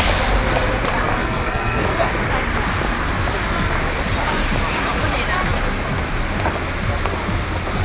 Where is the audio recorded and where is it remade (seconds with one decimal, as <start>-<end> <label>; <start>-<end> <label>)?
0.0-1.1 recorded; 1.1-2.1 remade; 2.1-7.8 recorded